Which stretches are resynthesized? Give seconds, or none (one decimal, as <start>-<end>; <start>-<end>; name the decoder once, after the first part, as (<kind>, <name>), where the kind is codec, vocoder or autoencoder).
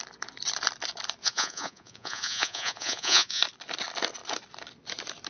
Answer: 1.2-3.4 (vocoder, Vocos)